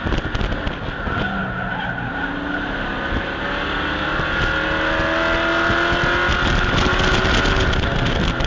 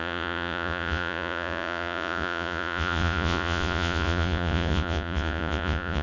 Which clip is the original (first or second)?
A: first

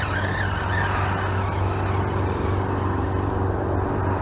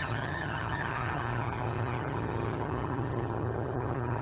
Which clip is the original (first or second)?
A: first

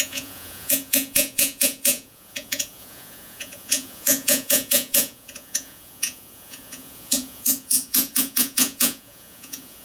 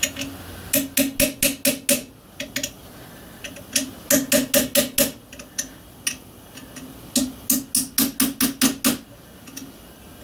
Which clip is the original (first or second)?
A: second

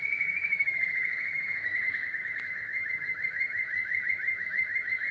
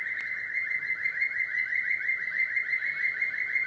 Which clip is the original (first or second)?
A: second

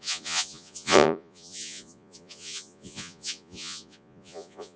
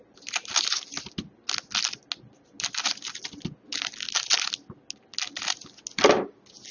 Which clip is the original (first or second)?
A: second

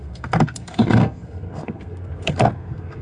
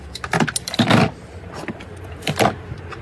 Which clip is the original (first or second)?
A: second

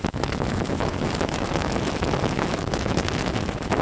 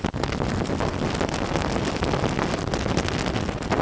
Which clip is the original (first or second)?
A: second